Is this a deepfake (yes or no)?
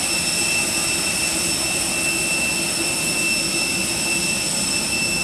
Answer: no